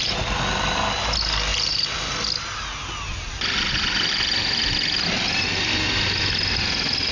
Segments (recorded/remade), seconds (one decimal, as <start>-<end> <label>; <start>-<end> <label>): 0.0-7.1 recorded